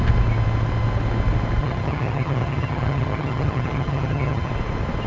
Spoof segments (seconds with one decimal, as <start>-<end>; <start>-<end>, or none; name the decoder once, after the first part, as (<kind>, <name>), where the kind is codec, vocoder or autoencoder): 1.6-4.5 (vocoder, HiFi-GAN)